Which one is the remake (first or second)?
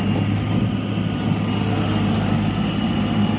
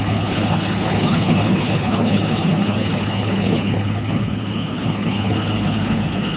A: second